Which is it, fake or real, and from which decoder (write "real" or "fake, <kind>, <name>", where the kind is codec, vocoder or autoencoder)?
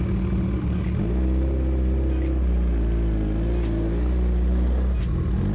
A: real